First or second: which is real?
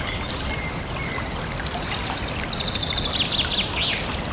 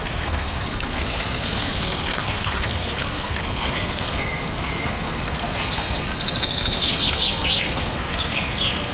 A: first